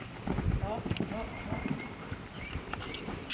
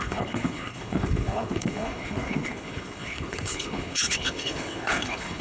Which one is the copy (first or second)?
second